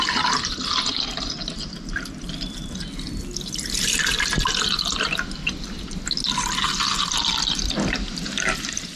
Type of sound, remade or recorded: recorded